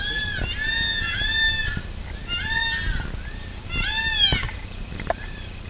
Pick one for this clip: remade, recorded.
recorded